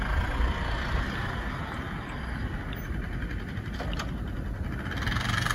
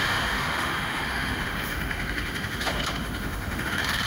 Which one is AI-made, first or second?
second